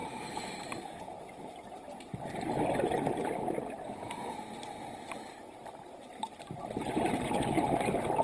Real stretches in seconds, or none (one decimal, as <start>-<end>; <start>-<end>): 0.7-8.2